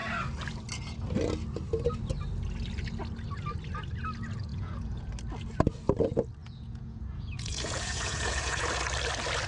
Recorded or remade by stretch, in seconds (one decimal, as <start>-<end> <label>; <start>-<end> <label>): 0.0-4.5 recorded; 4.5-5.1 remade; 5.1-6.4 recorded; 6.4-8.7 remade; 8.7-9.5 recorded